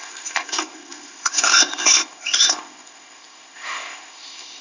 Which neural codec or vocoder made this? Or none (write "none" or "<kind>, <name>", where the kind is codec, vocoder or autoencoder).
codec, ZipCodec